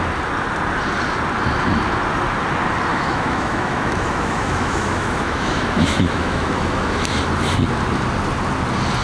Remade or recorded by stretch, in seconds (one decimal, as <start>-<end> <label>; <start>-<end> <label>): 0.0-2.9 recorded; 2.9-7.2 remade; 7.2-9.0 recorded